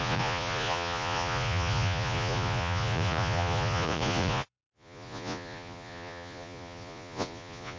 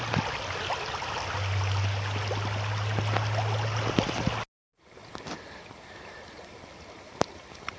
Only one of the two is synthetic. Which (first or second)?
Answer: first